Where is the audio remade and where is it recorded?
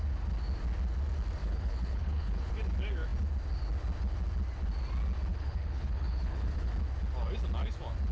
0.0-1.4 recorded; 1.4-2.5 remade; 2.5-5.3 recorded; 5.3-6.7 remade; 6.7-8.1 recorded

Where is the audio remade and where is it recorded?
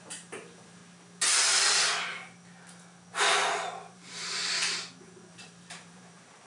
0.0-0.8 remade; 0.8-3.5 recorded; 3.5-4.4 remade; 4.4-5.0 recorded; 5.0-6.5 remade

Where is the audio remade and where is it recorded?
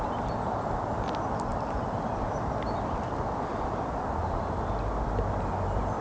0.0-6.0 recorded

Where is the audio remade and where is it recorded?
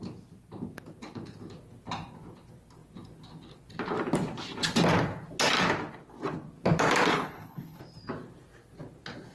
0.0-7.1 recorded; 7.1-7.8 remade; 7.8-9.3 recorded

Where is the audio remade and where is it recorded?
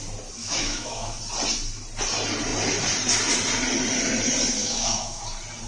0.0-0.4 recorded; 0.4-1.2 remade; 1.2-4.6 recorded; 4.6-5.2 remade; 5.2-5.7 recorded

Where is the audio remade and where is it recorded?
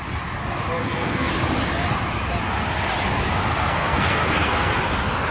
0.0-0.8 recorded; 0.8-1.3 remade; 1.3-3.5 recorded; 3.5-4.7 remade; 4.7-5.3 recorded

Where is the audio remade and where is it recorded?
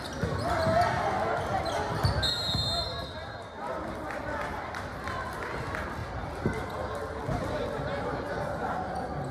0.0-9.3 recorded